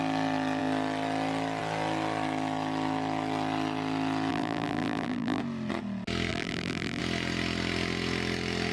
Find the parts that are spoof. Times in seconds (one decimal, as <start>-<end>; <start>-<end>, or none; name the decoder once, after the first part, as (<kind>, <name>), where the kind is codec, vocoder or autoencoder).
4.3-5.4 (vocoder, BigVGAN v2); 6.3-7.0